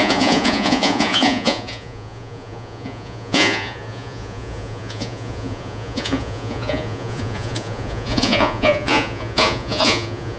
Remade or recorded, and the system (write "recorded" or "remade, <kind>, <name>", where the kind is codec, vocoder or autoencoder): remade, vocoder, Vocos